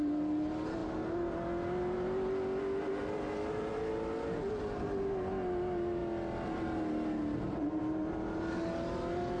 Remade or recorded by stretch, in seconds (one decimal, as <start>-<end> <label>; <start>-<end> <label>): 0.0-9.4 recorded